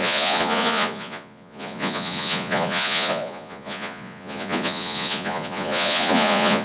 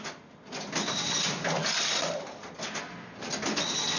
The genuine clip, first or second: second